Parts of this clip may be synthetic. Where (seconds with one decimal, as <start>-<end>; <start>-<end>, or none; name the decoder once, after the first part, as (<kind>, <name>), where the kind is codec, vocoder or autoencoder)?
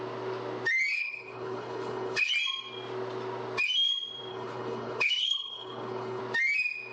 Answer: 0.9-2.3 (codec, HILCodec); 4.3-6.2